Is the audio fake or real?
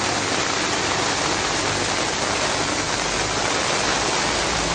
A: real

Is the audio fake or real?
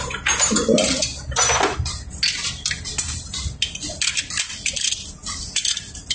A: real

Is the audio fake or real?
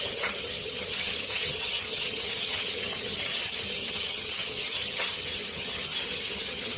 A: fake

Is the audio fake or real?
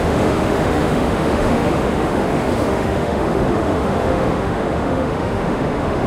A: fake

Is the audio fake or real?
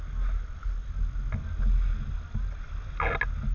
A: real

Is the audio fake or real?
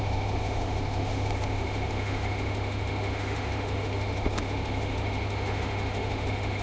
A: fake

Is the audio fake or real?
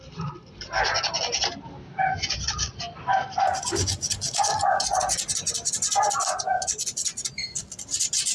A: real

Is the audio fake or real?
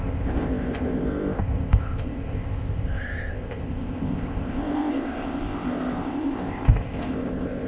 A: fake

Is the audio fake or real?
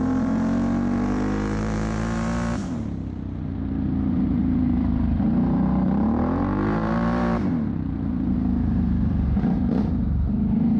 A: fake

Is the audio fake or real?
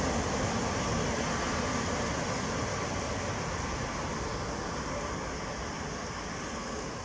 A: real